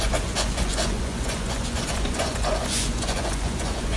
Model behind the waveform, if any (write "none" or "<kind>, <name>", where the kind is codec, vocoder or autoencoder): vocoder, Vocos